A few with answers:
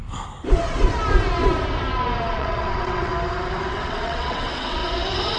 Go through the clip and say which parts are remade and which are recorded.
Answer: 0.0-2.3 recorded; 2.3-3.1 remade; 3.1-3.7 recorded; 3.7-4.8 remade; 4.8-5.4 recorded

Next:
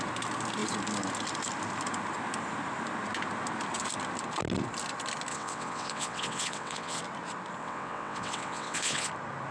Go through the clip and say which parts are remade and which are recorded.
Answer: 0.0-5.3 recorded; 5.3-7.0 remade; 7.0-7.6 recorded; 7.6-9.1 remade; 9.1-9.5 recorded

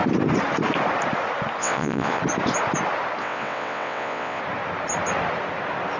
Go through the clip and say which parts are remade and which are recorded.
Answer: 0.0-1.6 recorded; 1.6-2.2 remade; 2.2-3.2 recorded; 3.2-4.4 remade; 4.4-6.0 recorded

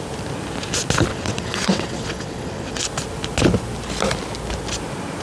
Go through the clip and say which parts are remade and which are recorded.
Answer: 0.0-1.1 recorded; 1.1-2.8 remade; 2.8-5.2 recorded

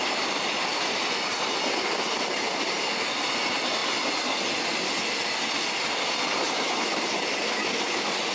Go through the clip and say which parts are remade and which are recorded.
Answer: 0.0-8.3 recorded

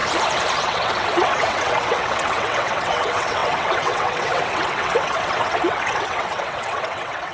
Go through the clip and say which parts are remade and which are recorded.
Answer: 0.0-0.6 recorded; 0.6-7.3 remade